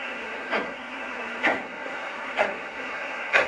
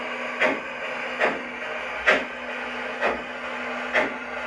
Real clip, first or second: second